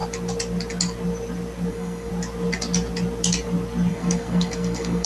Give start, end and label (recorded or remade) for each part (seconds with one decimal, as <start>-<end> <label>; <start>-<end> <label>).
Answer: 0.0-1.7 recorded; 1.7-2.1 remade; 2.1-3.9 recorded; 3.9-5.1 remade